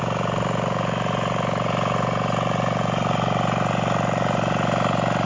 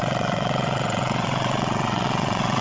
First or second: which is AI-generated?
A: second